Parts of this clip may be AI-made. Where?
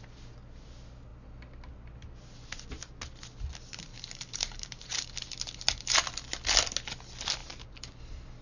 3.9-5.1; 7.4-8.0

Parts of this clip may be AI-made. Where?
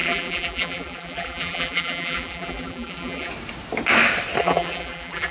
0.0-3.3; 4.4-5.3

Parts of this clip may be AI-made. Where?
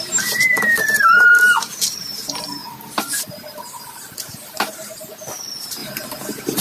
0.0-6.6